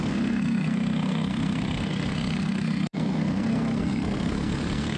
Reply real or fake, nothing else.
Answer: fake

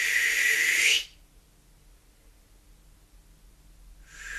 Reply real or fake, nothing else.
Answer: real